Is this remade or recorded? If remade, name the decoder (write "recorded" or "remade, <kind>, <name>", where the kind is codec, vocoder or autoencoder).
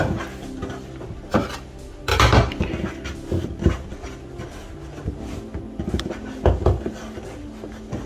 recorded